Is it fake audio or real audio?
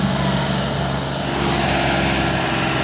real